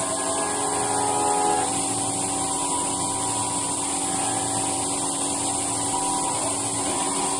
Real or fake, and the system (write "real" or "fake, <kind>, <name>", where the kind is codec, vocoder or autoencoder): real